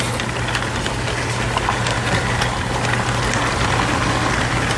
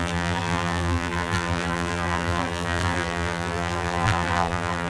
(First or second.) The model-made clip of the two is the second